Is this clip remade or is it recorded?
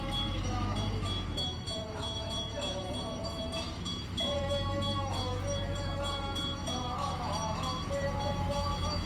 remade